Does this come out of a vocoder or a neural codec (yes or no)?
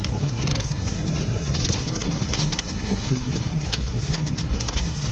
yes